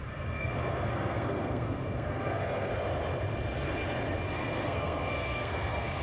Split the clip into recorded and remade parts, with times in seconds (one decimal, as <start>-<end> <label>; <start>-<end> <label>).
0.0-2.7 remade; 2.7-4.3 recorded; 4.3-6.0 remade